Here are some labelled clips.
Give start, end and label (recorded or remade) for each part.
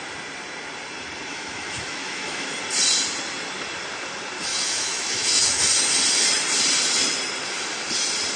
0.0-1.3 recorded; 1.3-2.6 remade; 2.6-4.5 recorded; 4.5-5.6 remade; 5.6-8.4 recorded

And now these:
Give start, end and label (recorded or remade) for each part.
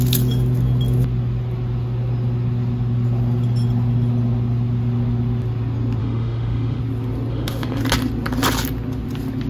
0.0-6.0 recorded; 6.0-6.8 remade; 6.8-7.3 recorded; 7.3-7.8 remade; 7.8-9.5 recorded